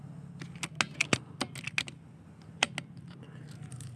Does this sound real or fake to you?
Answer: real